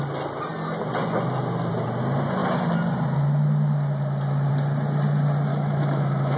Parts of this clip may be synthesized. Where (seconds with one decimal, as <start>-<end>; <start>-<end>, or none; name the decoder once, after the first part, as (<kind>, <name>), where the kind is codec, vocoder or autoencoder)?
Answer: 5.5-6.4 (autoencoder, DAC-VAE)